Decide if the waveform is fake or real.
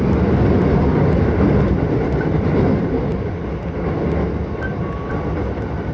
real